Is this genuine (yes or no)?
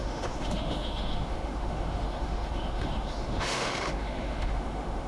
no